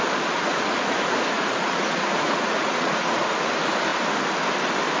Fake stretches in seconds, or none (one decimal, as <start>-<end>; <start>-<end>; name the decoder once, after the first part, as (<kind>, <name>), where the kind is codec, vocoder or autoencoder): 0.5-3.5 (vocoder, Vocos)